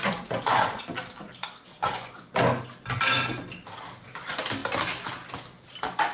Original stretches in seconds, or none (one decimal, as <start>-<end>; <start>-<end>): 0.8-1.7; 2.3-6.1

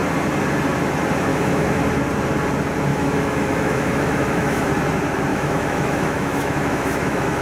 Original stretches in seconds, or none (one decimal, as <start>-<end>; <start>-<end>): 0.0-1.3; 1.8-2.9; 4.7-5.3

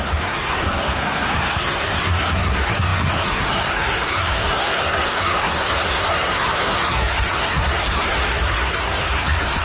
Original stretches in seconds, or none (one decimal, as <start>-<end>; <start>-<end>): none

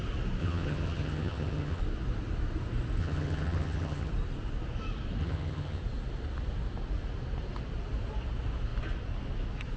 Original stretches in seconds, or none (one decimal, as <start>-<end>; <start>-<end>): 0.0-0.4; 1.8-3.0; 4.1-5.2; 5.8-9.8

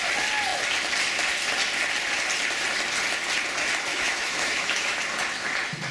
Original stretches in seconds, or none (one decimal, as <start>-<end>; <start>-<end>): 0.0-3.9; 5.0-5.9

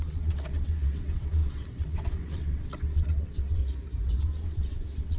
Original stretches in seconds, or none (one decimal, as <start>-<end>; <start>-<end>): 3.6-4.2